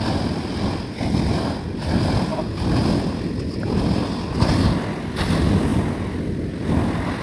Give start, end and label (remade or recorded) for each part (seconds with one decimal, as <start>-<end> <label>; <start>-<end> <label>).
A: 0.0-7.2 recorded